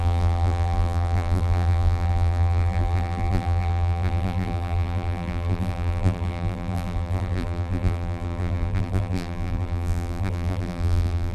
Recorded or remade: remade